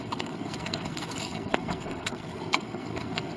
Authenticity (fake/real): fake